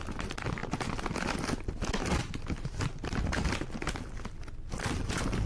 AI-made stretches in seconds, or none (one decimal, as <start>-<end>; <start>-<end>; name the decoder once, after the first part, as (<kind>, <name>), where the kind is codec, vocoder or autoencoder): 0.0-0.6 (vocoder, BigVGAN v2); 3.9-5.5